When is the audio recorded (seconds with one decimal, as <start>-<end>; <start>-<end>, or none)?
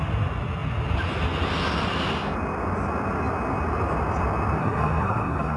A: 0.0-4.6